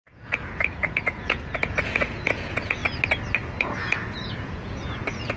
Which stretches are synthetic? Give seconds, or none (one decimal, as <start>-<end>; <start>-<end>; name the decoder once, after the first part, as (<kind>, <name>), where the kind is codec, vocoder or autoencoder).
0.0-2.8 (vocoder, Vocos); 3.6-5.4